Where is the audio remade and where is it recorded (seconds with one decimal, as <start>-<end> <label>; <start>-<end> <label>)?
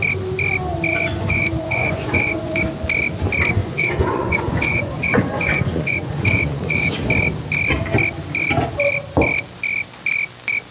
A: 0.0-0.9 recorded; 0.9-2.6 remade; 2.6-3.6 recorded; 3.6-7.0 remade; 7.0-10.7 recorded